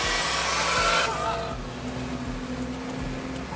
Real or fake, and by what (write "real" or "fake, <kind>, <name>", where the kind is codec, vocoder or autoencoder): real